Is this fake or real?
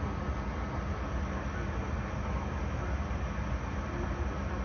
real